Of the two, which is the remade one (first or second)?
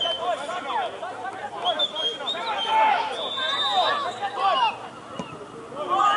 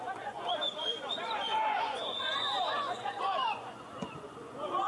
second